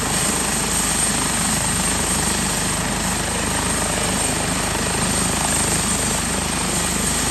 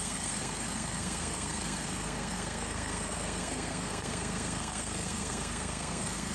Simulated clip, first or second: second